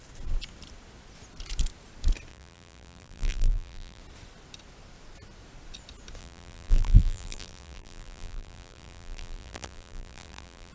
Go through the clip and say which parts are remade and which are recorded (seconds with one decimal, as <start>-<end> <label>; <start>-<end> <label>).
0.0-2.3 recorded; 2.3-4.0 remade; 4.0-6.2 recorded; 6.2-10.7 remade